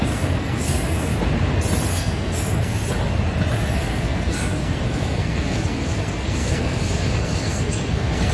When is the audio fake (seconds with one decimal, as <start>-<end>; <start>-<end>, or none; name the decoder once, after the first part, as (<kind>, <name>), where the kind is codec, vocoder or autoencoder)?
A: 0.0-1.1 (codec, SNAC); 1.9-2.8; 3.6-8.3